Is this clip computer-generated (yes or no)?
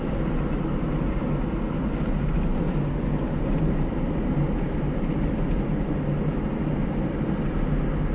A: no